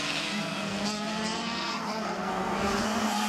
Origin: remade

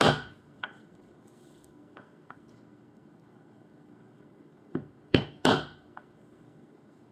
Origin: remade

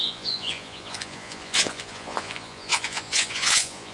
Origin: remade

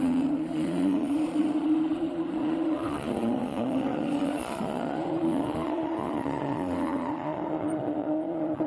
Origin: remade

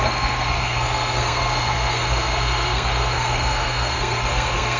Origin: remade